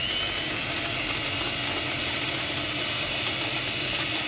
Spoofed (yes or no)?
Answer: no